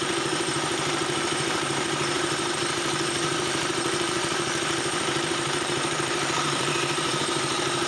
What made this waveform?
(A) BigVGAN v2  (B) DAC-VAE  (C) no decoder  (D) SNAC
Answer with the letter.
A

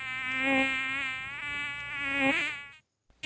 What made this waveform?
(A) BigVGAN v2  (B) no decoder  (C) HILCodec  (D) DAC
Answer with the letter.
B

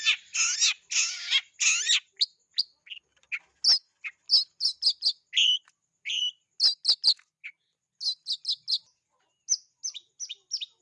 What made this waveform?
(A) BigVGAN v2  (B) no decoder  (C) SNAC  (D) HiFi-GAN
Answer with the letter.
B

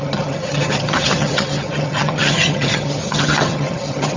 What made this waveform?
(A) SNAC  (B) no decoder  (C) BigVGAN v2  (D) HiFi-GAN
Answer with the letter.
D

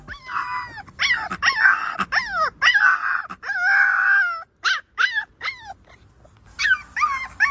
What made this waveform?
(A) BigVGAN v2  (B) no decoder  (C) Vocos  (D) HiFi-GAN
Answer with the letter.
B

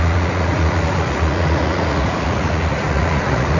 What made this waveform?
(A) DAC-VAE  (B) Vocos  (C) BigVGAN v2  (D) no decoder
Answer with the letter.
B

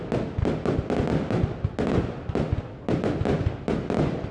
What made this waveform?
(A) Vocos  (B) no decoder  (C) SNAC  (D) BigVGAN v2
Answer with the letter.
B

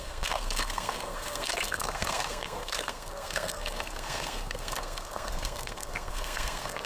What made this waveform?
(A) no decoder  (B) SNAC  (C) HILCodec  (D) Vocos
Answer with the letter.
B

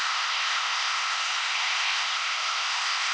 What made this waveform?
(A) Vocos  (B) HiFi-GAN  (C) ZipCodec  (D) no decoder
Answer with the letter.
C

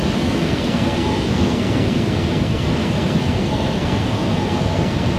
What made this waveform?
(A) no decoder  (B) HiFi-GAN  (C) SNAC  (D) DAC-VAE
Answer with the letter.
C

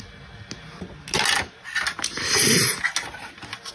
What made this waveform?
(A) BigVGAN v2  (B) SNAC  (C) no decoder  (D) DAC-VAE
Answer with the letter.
C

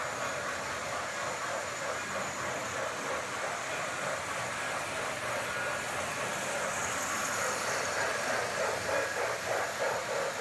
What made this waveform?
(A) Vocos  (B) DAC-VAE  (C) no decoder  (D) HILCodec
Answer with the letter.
C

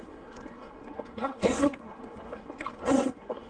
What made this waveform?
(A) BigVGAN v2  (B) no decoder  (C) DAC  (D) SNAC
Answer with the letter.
D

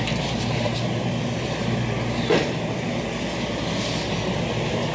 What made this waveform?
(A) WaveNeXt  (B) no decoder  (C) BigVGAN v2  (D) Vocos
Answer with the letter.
B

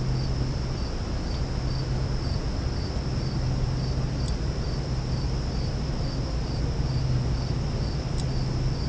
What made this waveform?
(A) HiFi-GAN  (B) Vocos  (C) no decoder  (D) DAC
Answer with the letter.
C